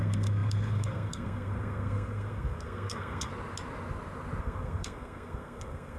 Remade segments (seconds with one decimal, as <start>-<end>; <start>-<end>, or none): 0.0-3.3; 4.4-6.0